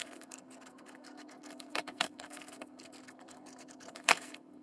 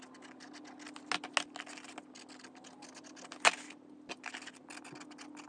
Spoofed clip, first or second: first